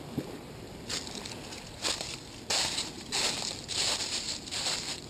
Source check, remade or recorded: recorded